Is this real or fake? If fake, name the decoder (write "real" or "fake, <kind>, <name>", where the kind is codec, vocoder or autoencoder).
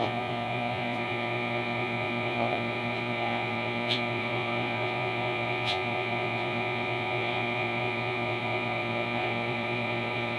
fake, vocoder, Vocos